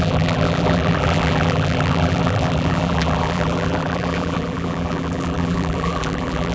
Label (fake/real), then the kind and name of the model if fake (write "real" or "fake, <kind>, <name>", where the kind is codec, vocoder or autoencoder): fake, vocoder, BigVGAN v2